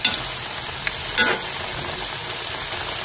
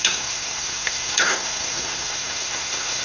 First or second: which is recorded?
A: first